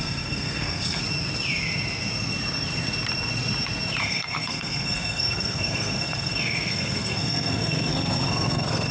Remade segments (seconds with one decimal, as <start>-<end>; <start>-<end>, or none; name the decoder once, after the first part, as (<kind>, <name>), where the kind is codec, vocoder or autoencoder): 0.0-1.0 (codec, SNAC); 4.0-8.9